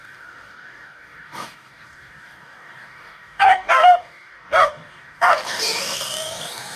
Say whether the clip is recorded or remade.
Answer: remade